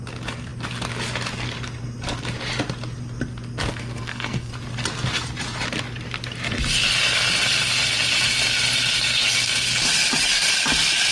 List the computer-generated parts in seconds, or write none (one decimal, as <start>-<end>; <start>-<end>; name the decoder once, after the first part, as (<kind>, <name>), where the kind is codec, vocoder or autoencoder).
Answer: 3.7-4.5 (codec, SNAC)